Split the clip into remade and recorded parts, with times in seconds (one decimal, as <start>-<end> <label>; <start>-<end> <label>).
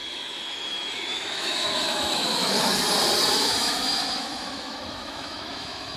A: 0.0-2.7 remade; 2.7-3.4 recorded; 3.4-6.0 remade